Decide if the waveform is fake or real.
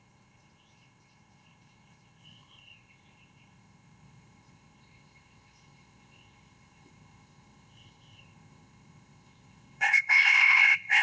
fake